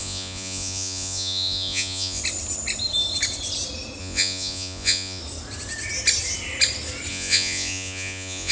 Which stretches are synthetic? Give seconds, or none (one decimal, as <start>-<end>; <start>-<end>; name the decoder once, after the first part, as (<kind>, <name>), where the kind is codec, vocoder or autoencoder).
0.0-2.2 (vocoder, Vocos); 4.0-5.2; 7.1-8.5

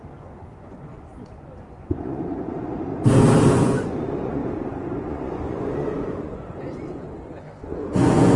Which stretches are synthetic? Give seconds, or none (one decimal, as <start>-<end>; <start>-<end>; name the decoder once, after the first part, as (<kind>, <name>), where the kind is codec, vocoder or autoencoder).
0.0-2.9 (vocoder, Vocos); 3.5-8.4

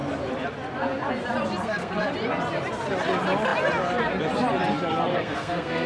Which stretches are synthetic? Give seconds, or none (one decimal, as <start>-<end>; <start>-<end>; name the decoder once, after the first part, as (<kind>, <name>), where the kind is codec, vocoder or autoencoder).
1.6-2.1 (codec, SNAC); 5.1-5.9

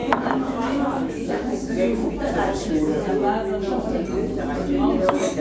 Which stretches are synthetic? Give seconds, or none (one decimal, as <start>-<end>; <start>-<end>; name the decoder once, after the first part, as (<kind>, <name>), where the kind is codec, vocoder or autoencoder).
0.0-2.0 (autoencoder, DAC-VAE); 2.7-3.2; 5.0-5.4

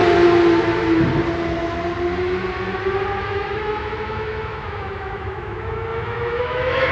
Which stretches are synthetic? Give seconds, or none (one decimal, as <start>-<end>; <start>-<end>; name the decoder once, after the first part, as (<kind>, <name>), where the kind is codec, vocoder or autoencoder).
3.2-6.9 (autoencoder, DAC-VAE)

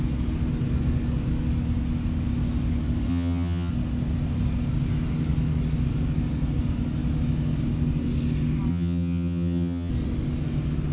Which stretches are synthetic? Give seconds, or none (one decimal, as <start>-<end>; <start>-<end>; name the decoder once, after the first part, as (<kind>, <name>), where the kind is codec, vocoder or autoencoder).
3.1-3.7 (vocoder, HiFi-GAN); 8.7-9.9

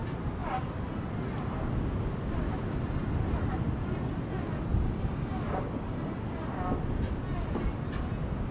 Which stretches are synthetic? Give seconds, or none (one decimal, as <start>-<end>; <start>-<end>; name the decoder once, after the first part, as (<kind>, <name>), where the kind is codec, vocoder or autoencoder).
none

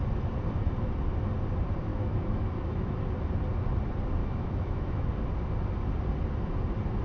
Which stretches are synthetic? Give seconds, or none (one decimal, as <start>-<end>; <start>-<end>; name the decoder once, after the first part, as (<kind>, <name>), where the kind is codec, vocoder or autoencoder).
1.9-3.0 (autoencoder, DAC-VAE); 4.2-5.1